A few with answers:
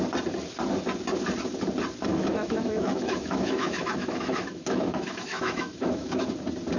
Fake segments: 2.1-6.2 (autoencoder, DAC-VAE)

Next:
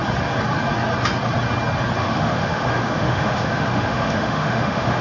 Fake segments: 2.0-5.0 (autoencoder, DAC-VAE)

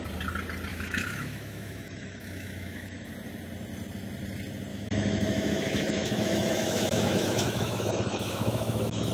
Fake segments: 0.7-3.1 (autoencoder, DAC-VAE); 4.7-9.1

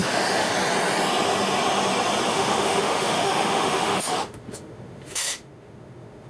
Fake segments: 0.0-0.5 (autoencoder, DAC-VAE); 2.3-6.3

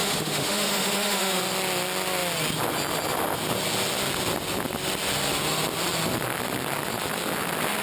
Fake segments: 0.0-1.4 (autoencoder, DAC-VAE)

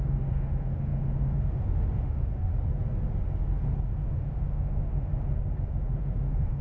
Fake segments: 0.0-2.5 (autoencoder, DAC-VAE); 4.0-5.1; 5.7-6.6

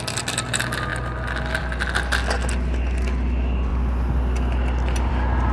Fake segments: none

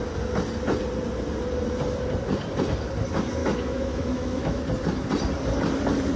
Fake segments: 3.4-4.6 (autoencoder, DAC-VAE)